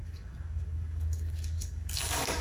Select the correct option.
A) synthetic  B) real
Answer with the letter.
A